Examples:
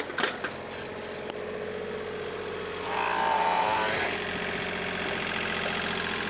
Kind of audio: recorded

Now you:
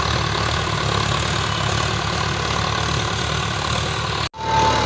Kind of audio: recorded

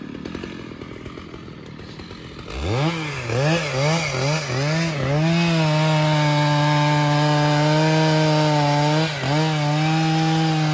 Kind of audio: recorded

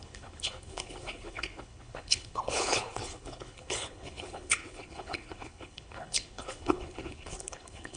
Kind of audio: remade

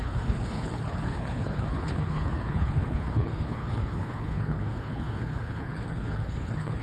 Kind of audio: remade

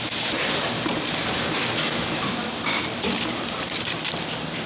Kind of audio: recorded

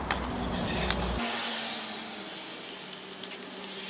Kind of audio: recorded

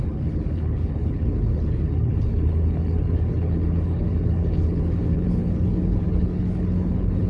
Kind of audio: remade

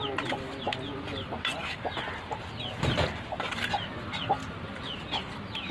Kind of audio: recorded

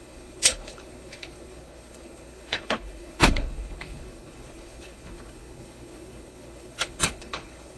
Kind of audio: remade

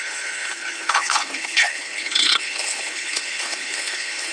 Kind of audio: remade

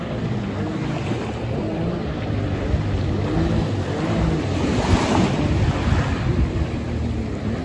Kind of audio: recorded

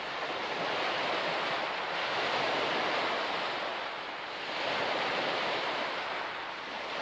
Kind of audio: recorded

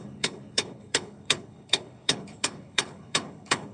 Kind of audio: remade